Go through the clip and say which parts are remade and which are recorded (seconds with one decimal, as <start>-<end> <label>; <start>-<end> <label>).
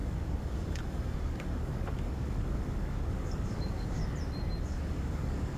0.0-4.0 remade; 4.0-4.6 recorded; 4.6-5.6 remade